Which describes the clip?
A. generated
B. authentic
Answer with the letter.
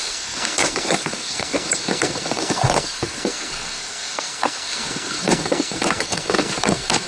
A